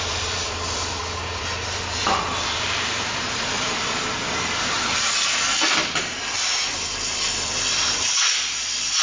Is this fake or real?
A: fake